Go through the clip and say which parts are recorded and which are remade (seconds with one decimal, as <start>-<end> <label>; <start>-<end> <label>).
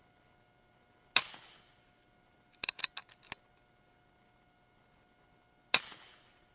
0.0-6.5 recorded